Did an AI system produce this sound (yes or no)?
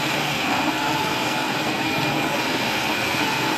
yes